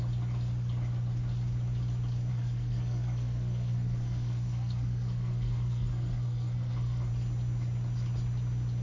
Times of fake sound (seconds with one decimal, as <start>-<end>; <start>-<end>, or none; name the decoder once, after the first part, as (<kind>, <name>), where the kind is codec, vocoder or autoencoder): 2.3-7.1 (codec, SNAC)